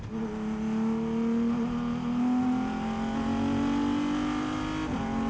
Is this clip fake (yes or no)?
no